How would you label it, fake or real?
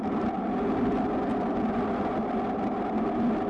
real